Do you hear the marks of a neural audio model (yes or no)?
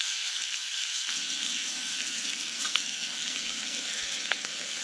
yes